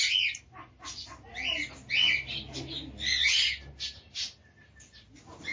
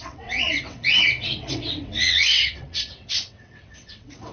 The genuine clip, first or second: first